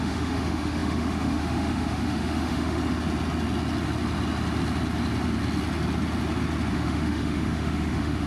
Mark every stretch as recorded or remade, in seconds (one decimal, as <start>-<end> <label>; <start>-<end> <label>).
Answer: 0.0-2.8 remade; 2.8-6.7 recorded; 6.7-8.3 remade